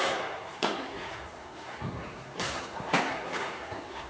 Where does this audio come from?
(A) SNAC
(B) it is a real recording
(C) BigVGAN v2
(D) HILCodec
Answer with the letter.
A